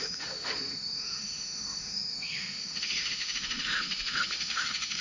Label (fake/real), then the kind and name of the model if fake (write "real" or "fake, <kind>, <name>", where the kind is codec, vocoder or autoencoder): fake, autoencoder, DAC-VAE